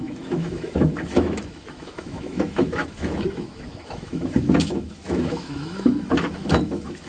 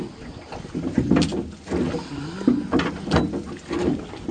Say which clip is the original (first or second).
second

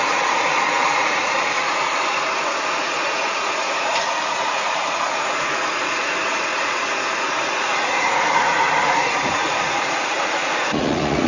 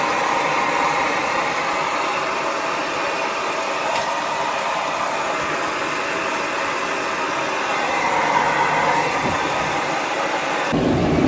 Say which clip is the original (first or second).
second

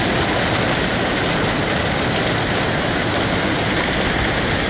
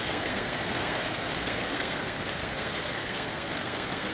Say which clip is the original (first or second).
first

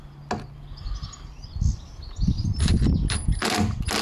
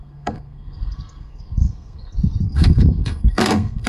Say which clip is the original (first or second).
first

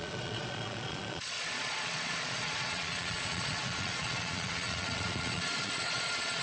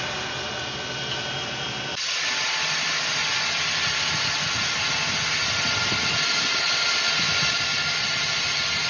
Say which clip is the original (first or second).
second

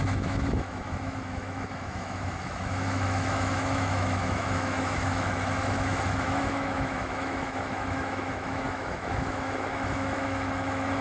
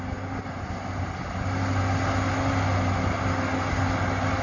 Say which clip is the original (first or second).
second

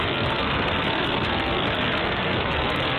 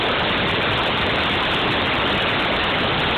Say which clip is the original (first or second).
second